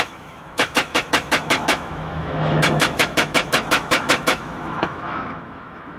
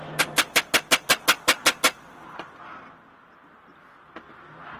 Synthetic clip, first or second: first